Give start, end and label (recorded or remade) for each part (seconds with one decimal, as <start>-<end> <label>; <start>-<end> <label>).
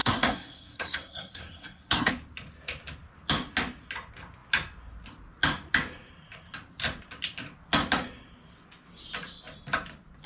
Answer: 0.0-2.1 remade; 2.1-10.3 recorded